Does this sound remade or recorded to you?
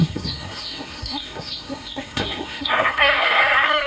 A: remade